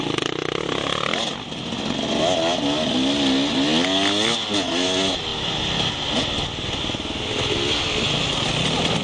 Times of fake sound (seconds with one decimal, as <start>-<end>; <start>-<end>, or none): none